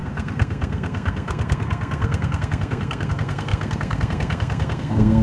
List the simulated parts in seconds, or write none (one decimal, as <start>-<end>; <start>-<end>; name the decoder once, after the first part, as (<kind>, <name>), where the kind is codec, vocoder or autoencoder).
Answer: 0.0-5.2 (codec, SNAC)